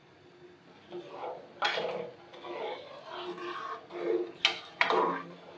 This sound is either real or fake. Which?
real